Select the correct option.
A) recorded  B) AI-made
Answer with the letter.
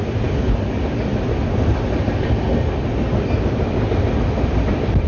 A